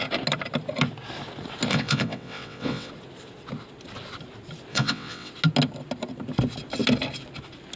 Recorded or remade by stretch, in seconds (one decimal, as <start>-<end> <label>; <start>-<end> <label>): 0.0-1.7 recorded; 1.7-2.9 remade; 2.9-4.7 recorded; 4.7-5.3 remade; 5.3-7.8 recorded